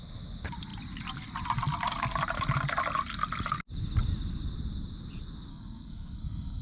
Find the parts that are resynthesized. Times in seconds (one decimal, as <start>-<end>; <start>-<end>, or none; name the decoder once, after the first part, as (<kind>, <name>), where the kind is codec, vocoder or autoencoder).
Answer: 5.5-6.6 (codec, SNAC)